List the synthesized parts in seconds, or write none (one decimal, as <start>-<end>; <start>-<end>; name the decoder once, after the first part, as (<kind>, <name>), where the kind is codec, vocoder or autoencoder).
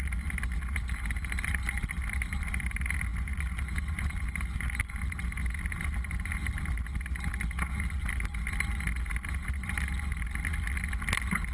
none